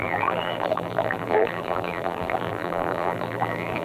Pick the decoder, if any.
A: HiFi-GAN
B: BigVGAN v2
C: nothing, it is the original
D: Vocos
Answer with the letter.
B